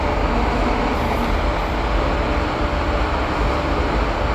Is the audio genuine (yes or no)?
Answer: yes